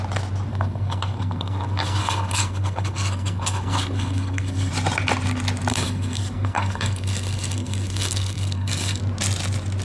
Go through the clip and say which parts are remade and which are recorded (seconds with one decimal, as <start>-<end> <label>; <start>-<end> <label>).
0.0-0.5 recorded; 0.5-4.7 remade; 4.7-5.7 recorded; 5.7-9.0 remade; 9.0-9.8 recorded